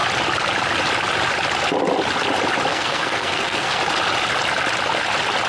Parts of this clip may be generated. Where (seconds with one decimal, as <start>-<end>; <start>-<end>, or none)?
2.7-3.8